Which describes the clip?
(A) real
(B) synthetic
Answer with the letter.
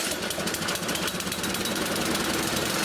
A